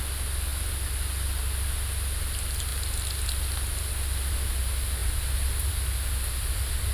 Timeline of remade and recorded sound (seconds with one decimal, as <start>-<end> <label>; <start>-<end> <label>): 0.0-6.9 recorded